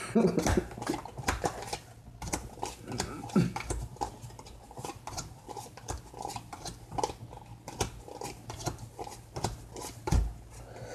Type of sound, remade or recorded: recorded